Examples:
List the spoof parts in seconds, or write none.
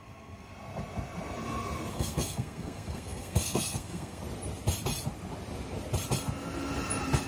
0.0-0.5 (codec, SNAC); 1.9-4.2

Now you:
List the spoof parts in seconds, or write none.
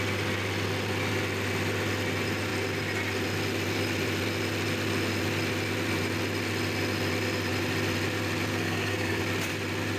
8.5-9.2 (codec, SNAC)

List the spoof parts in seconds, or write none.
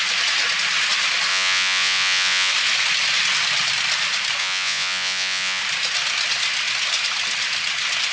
1.3-2.5 (vocoder, Vocos); 4.4-5.6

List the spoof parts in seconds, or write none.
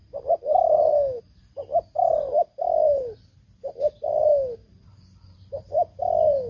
none